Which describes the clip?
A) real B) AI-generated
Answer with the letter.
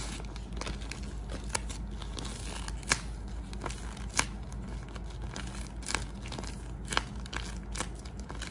A